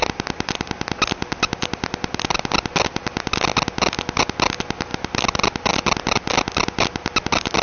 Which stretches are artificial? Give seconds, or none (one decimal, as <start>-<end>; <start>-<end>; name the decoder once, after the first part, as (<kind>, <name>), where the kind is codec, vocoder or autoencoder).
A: none